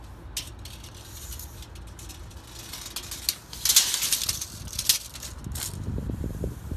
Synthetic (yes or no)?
no